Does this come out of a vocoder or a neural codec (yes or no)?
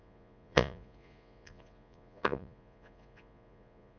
yes